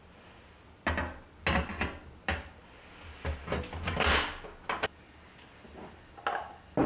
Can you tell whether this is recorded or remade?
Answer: recorded